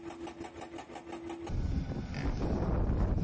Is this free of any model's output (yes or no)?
yes